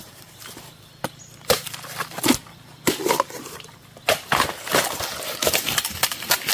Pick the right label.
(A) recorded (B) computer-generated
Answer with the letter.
B